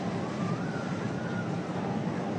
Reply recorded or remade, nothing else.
recorded